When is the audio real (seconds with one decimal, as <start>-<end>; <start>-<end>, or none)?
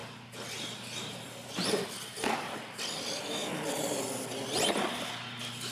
0.0-5.7